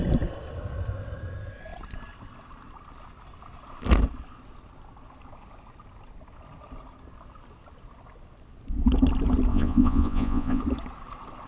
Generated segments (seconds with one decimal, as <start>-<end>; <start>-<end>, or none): 9.5-10.6